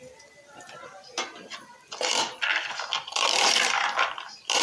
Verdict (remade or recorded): recorded